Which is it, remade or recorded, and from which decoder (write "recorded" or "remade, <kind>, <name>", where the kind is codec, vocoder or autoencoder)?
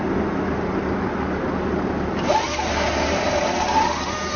recorded